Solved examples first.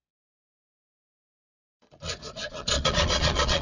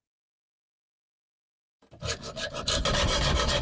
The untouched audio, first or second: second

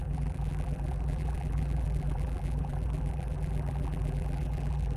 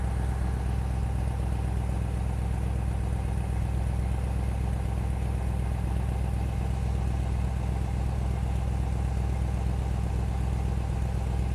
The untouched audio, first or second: second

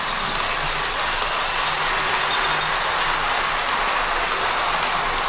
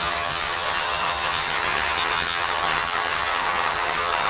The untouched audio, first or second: first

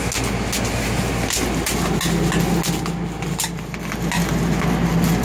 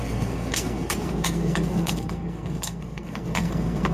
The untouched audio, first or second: first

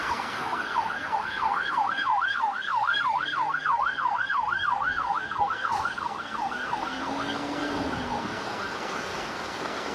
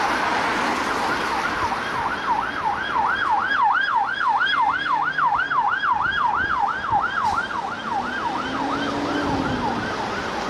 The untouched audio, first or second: second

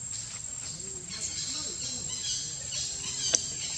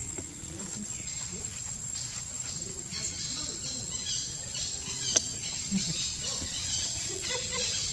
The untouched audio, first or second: first